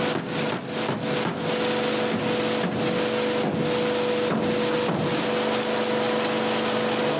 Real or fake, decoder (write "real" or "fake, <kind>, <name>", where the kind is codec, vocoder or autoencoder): real